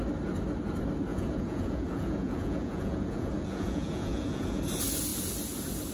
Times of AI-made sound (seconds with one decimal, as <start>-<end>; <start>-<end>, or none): 1.1-4.6